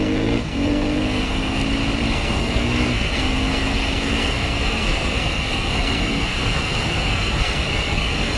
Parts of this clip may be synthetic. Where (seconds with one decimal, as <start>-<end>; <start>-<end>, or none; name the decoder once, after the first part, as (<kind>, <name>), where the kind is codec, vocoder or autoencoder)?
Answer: 0.0-1.6 (codec, SNAC); 2.1-8.4